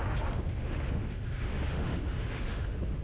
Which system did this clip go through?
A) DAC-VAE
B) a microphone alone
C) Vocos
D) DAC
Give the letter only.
A